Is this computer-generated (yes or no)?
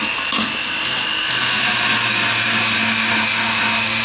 no